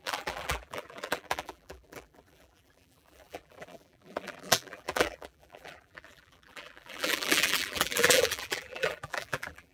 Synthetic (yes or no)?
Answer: yes